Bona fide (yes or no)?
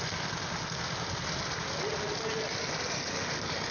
yes